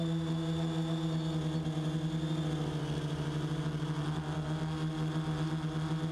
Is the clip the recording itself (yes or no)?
yes